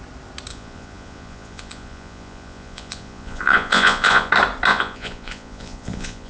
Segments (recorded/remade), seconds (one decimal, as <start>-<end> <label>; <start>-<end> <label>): 0.0-0.5 recorded; 0.5-4.3 remade; 4.3-4.7 recorded; 4.7-6.3 remade